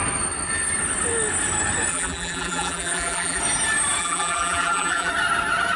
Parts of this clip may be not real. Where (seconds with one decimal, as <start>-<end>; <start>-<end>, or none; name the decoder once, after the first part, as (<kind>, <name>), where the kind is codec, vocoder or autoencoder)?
1.9-3.4 (vocoder, BigVGAN v2); 4.0-5.1